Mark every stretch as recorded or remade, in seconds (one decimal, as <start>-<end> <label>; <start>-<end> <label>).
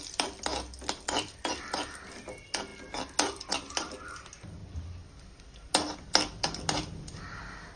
0.0-7.8 recorded